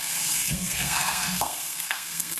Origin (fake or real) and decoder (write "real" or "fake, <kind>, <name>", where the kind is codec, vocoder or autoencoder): fake, codec, SNAC